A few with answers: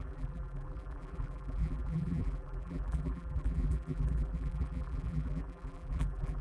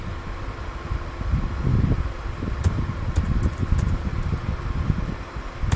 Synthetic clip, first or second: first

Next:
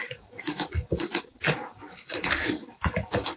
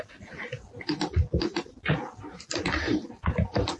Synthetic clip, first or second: first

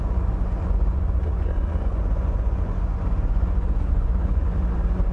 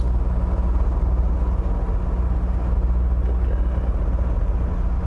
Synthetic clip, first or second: first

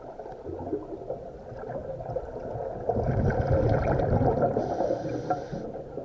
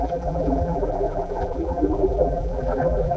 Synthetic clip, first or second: second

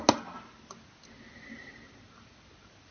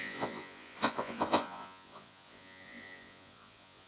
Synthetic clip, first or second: second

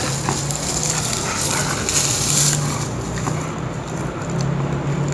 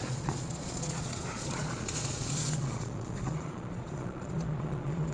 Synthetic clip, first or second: second